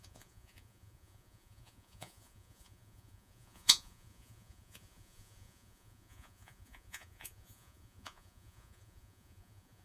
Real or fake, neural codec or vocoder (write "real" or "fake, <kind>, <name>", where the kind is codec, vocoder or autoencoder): fake, vocoder, Vocos